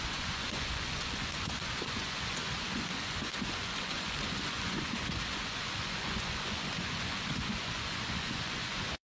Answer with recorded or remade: remade